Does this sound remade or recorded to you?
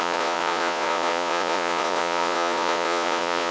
remade